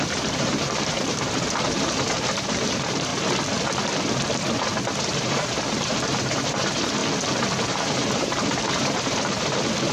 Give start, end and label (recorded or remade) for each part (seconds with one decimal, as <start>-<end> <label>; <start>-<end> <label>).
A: 0.0-3.1 remade; 3.1-5.0 recorded; 5.0-7.0 remade; 7.0-7.6 recorded; 7.6-9.9 remade